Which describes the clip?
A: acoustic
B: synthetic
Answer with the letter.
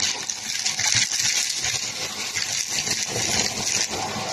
A